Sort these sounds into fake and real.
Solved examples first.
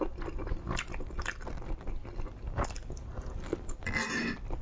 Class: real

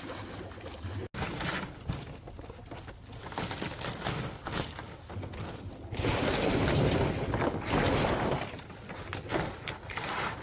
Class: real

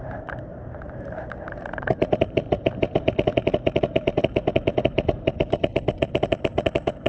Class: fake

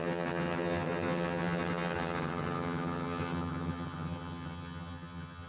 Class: fake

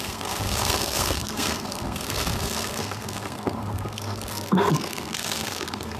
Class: fake